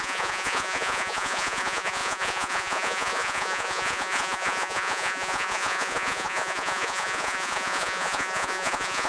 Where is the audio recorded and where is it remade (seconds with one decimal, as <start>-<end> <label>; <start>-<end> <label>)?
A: 0.0-9.1 remade